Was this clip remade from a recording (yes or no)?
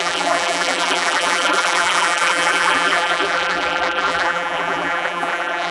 yes